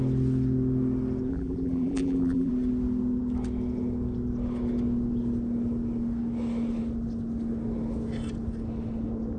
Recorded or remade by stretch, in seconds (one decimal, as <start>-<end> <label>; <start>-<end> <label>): 0.0-1.3 recorded; 1.3-2.5 remade; 2.5-9.4 recorded